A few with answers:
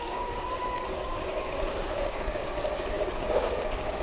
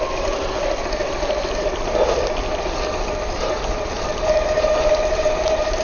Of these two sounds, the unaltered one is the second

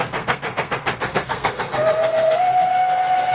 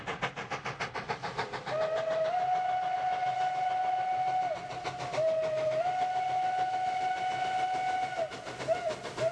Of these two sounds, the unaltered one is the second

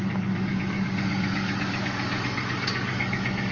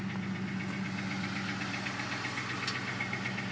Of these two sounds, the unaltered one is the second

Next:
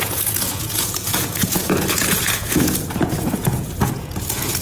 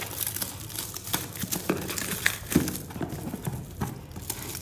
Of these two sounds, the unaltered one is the second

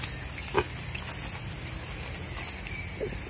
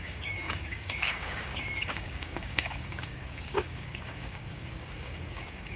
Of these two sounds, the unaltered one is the first